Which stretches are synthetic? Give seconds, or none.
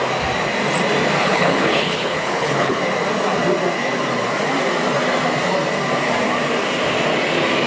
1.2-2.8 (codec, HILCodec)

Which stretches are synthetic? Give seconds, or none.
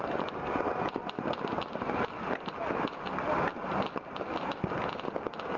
1.0-1.6 (vocoder, BigVGAN v2)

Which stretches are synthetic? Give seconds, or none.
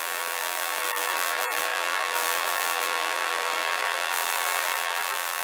0.0-5.4 (vocoder, BigVGAN v2)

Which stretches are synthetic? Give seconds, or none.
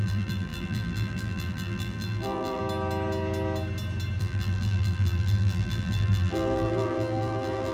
0.0-2.6 (vocoder, BigVGAN v2); 4.2-7.7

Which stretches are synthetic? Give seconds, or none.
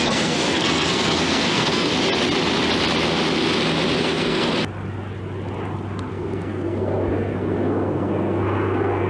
0.0-1.9 (codec, SNAC); 4.0-4.5; 6.1-9.1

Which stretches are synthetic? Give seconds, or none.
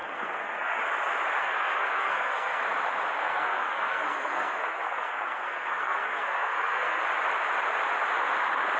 0.0-0.8 (codec, SNAC); 1.4-2.6; 3.2-7.0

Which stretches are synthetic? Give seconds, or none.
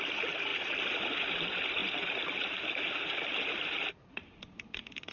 none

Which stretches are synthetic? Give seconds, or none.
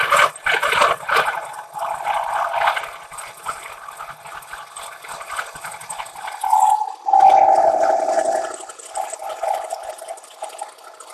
none